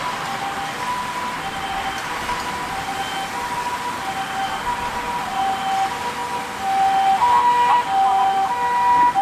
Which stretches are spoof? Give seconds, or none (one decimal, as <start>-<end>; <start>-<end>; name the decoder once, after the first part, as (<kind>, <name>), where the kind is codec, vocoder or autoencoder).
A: none